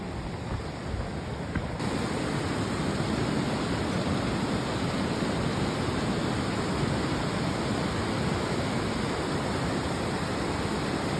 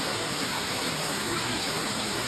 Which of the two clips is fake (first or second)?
second